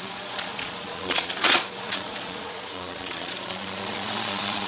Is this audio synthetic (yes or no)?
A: yes